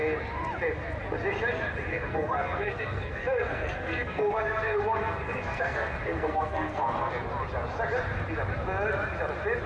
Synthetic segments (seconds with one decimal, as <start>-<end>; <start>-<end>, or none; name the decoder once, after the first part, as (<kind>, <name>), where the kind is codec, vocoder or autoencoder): 1.9-7.1 (codec, SNAC)